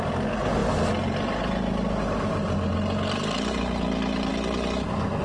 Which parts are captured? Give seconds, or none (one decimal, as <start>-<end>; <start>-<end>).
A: 0.0-5.2